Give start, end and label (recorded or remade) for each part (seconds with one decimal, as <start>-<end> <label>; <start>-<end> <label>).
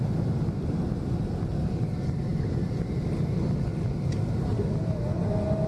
0.0-5.7 recorded